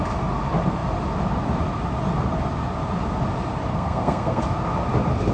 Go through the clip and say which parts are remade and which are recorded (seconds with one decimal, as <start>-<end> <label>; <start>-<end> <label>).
0.0-3.7 recorded; 3.7-4.4 remade; 4.4-5.3 recorded

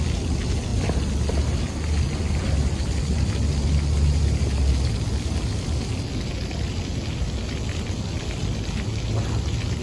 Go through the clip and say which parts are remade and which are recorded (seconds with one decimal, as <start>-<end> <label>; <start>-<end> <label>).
0.0-9.8 recorded

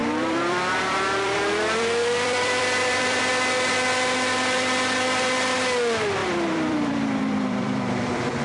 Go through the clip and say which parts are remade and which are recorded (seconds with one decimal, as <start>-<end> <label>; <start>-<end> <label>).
0.0-3.3 remade; 3.3-6.2 recorded; 6.2-8.4 remade